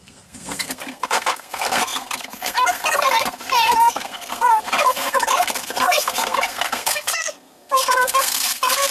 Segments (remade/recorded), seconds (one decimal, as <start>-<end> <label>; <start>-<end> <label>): 0.0-8.9 remade